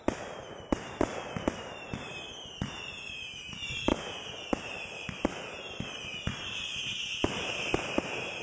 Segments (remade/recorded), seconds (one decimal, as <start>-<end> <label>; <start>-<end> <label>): 0.0-8.4 recorded